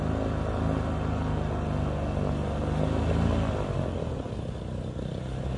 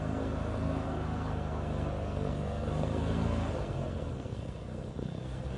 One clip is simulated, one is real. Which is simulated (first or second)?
second